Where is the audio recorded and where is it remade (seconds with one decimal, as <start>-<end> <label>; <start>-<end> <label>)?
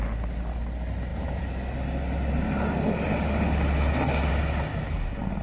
0.0-5.4 recorded